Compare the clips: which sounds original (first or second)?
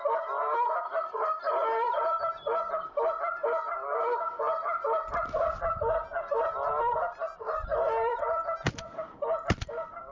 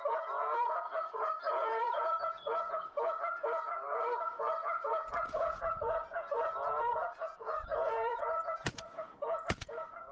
first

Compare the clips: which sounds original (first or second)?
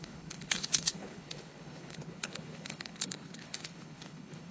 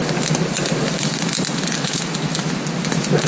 second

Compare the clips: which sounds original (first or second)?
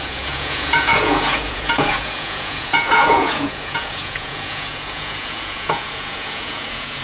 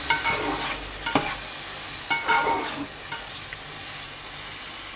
second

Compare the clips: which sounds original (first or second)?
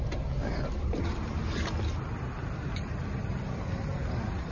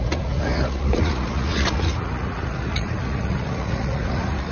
first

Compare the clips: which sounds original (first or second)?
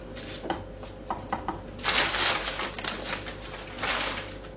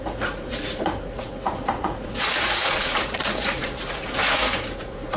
first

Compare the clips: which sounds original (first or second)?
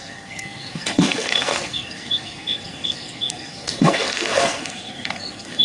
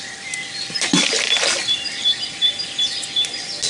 second